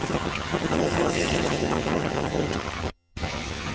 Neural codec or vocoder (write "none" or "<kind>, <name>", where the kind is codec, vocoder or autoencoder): vocoder, HiFi-GAN